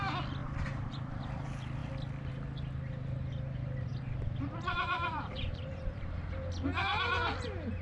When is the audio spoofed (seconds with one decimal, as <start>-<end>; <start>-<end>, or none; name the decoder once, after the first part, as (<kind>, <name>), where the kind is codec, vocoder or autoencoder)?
0.4-1.2 (vocoder, BigVGAN v2); 3.9-6.1